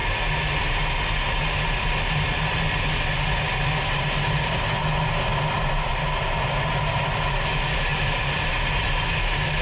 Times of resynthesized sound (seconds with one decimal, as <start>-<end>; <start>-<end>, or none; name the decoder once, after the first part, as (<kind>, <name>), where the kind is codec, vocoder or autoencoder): 5.3-5.9 (vocoder, BigVGAN v2); 7.9-8.5